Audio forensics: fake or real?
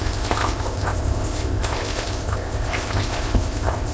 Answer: fake